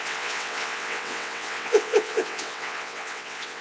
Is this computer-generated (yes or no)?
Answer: yes